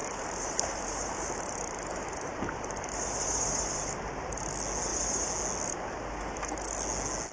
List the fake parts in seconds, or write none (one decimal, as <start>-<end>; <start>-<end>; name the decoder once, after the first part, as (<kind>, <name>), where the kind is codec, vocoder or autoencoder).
0.0-4.4 (vocoder, BigVGAN v2)